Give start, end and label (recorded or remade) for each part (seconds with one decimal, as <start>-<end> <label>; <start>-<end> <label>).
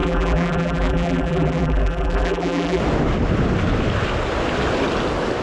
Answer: 0.0-2.8 remade; 2.8-5.4 recorded